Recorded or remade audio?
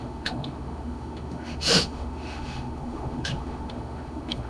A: remade